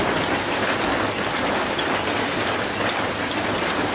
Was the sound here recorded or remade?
recorded